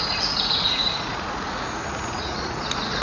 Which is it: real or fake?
fake